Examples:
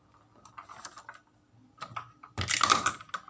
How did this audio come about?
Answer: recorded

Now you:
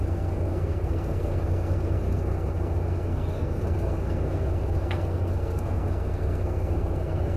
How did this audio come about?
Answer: remade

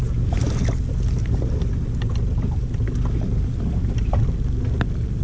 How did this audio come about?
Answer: recorded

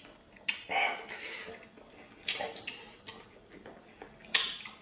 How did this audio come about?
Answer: recorded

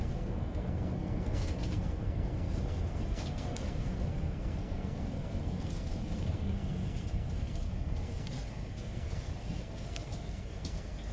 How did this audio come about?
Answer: remade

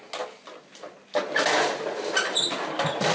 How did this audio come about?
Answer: recorded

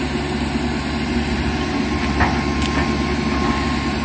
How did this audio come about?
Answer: recorded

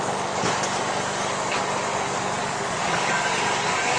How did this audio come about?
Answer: remade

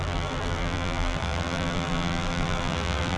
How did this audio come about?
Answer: remade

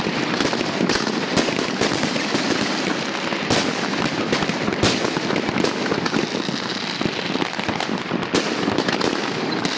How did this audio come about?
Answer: recorded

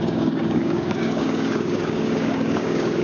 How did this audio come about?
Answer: remade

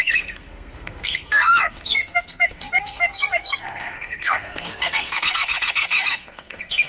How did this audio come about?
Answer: remade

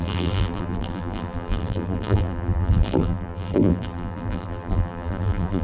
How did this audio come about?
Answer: remade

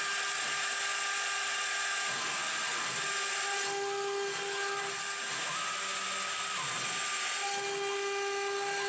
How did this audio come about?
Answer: recorded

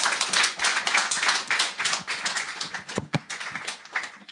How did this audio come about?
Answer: remade